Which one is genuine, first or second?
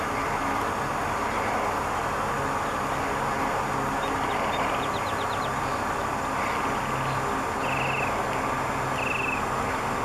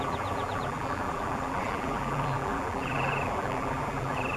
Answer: first